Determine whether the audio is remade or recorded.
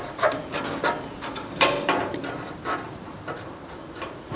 recorded